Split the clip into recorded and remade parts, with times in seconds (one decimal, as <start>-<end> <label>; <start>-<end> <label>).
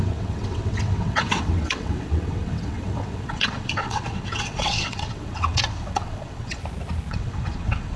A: 0.0-6.6 remade; 6.6-7.1 recorded; 7.1-8.0 remade